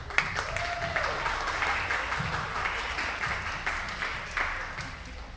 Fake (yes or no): no